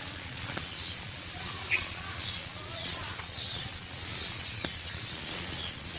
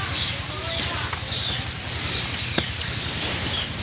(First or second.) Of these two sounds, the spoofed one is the first